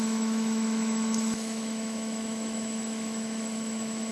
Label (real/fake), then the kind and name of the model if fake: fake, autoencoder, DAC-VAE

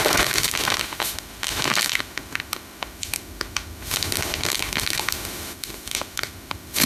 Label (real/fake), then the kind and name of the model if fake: fake, autoencoder, DAC-VAE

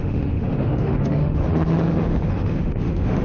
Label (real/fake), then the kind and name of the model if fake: fake, autoencoder, DAC-VAE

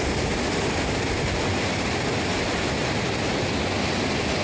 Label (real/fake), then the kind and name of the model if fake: real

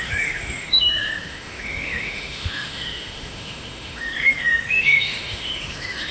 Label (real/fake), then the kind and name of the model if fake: fake, autoencoder, DAC-VAE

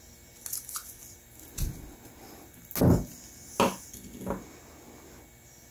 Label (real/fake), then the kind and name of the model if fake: real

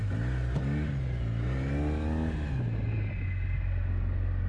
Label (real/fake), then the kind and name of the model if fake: real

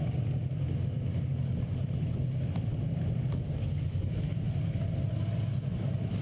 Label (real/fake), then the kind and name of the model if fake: real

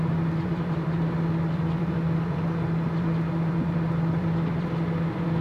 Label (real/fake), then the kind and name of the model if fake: real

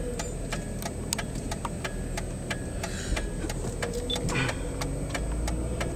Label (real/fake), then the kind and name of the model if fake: real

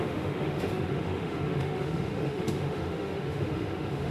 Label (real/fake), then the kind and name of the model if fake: fake, autoencoder, DAC-VAE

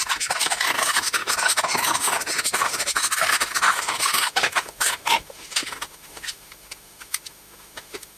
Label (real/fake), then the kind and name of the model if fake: fake, autoencoder, DAC-VAE